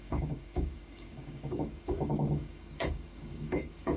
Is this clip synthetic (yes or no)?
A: yes